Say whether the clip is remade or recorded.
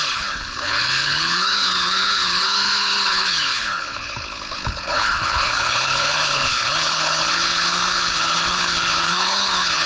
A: remade